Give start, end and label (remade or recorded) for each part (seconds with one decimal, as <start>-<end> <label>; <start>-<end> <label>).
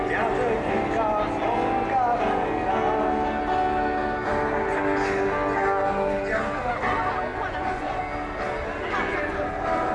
0.0-7.3 recorded; 7.3-8.0 remade; 8.0-9.9 recorded